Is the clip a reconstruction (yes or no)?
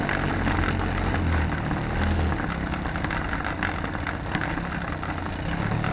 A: no